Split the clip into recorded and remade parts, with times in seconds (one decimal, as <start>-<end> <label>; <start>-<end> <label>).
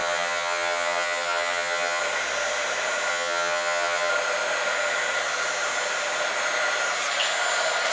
0.0-2.0 remade; 2.0-3.1 recorded; 3.1-4.1 remade; 4.1-7.9 recorded